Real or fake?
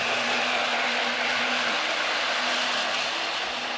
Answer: real